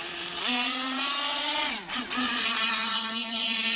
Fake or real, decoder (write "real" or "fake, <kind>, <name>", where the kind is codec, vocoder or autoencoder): fake, vocoder, Vocos